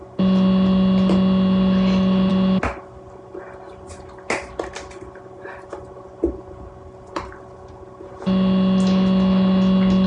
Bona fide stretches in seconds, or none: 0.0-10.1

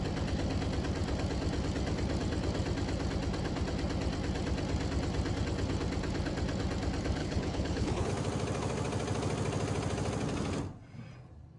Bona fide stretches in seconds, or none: 0.0-7.2; 8.1-11.6

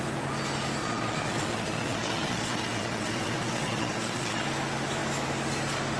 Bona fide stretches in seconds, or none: 0.0-0.8; 4.4-6.0

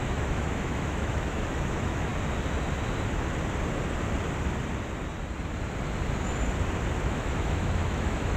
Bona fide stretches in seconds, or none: 2.1-7.0

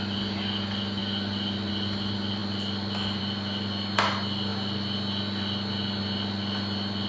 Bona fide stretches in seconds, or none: 0.0-2.4; 3.2-7.1

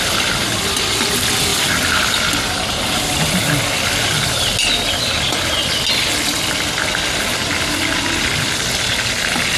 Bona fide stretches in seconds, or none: 0.0-9.6

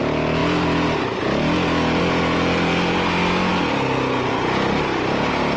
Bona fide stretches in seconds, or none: 0.0-5.6